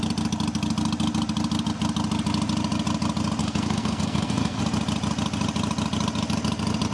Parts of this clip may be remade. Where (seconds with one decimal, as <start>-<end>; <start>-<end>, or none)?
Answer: 3.4-4.6